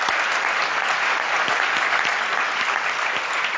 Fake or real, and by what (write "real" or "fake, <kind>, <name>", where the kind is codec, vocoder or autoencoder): real